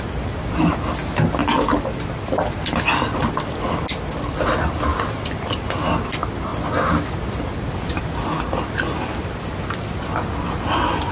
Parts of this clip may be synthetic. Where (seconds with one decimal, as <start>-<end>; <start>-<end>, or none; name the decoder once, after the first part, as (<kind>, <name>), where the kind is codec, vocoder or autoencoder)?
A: none